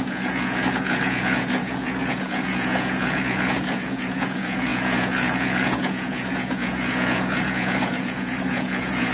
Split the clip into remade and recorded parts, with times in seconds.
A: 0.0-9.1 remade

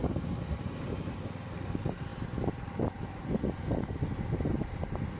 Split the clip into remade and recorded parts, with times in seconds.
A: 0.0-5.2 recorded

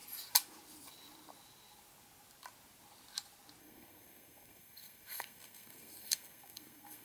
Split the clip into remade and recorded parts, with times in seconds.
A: 0.0-3.6 recorded; 3.6-7.0 remade

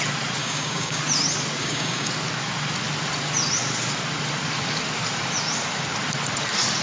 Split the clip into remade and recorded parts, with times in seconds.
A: 0.0-0.4 recorded; 0.4-1.0 remade; 1.0-1.6 recorded; 1.6-2.1 remade; 2.1-6.8 recorded

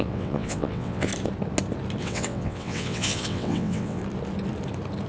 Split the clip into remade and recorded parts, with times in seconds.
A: 0.0-1.1 remade; 1.1-2.0 recorded; 2.0-4.0 remade; 4.0-5.1 recorded

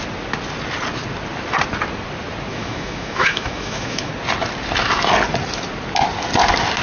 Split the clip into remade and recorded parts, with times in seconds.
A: 0.0-2.5 recorded; 2.5-4.1 remade; 4.1-6.8 recorded

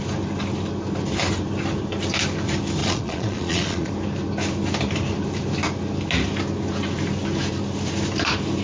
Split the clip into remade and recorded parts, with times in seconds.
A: 0.0-2.8 recorded; 2.8-3.9 remade; 3.9-8.6 recorded

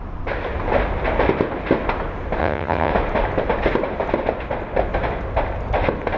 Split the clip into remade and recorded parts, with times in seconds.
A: 0.0-2.4 recorded; 2.4-2.9 remade; 2.9-6.2 recorded